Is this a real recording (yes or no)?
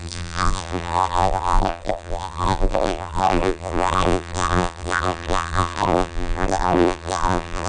no